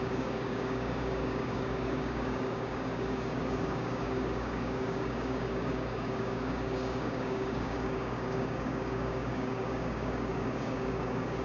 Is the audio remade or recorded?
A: remade